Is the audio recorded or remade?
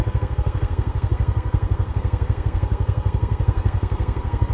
remade